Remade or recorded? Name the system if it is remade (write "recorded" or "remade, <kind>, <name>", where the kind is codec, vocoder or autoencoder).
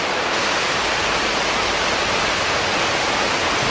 recorded